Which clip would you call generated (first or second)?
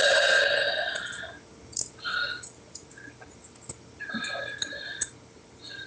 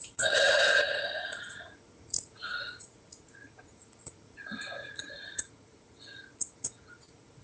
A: second